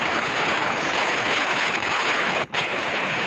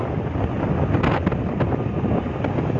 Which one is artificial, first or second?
first